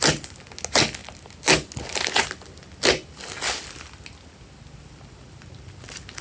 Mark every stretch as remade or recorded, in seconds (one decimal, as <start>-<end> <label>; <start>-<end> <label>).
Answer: 0.0-6.2 recorded